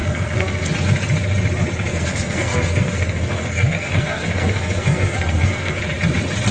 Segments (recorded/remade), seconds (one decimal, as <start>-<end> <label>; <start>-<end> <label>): 0.0-0.7 remade; 0.7-1.9 recorded; 1.9-5.8 remade; 5.8-6.5 recorded